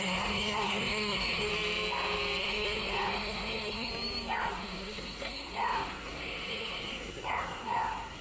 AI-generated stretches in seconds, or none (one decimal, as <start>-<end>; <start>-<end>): 0.0-1.5; 2.4-3.9; 4.5-8.2